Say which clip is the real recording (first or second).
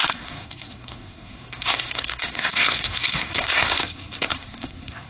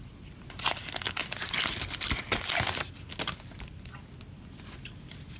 second